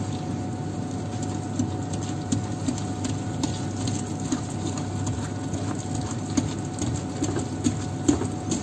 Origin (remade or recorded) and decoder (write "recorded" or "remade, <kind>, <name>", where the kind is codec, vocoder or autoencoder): recorded